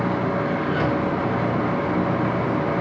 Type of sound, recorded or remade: recorded